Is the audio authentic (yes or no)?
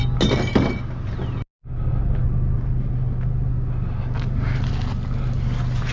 yes